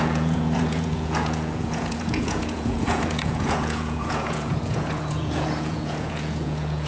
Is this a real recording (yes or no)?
no